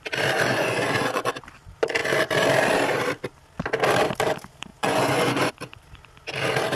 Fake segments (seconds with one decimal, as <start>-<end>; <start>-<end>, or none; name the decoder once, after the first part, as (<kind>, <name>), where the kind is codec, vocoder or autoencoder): 0.5-1.3 (vocoder, Vocos); 4.7-5.5